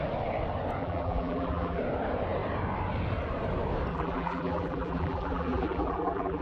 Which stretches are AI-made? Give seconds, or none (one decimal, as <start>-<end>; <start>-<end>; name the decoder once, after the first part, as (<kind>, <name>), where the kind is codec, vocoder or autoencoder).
0.8-1.8 (vocoder, BigVGAN v2); 3.9-6.4